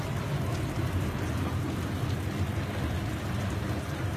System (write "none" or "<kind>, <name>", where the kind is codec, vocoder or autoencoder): none